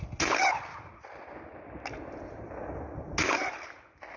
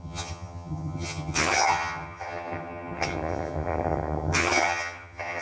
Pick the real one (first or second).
first